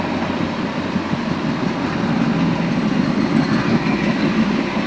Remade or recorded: recorded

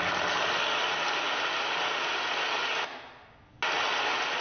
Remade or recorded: recorded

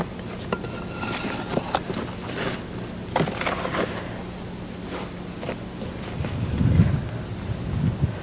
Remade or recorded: recorded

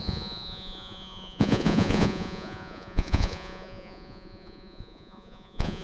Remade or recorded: remade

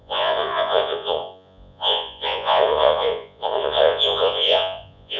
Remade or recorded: remade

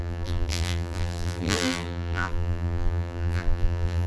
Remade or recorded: remade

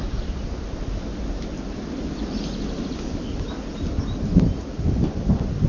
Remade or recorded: recorded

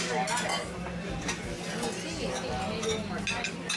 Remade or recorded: recorded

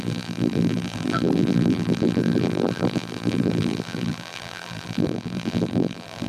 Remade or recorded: remade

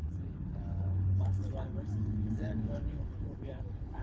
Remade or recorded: remade